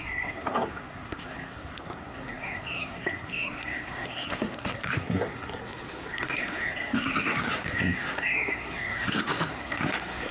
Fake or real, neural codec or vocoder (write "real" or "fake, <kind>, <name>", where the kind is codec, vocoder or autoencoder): fake, codec, SNAC